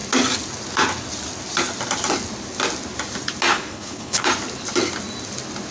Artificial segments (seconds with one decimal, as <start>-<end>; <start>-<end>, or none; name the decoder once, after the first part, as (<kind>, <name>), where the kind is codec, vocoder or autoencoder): 3.5-4.3 (codec, HILCodec)